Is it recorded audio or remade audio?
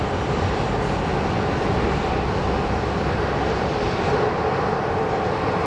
recorded